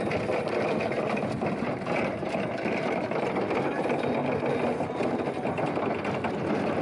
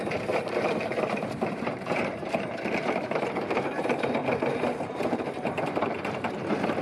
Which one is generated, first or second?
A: second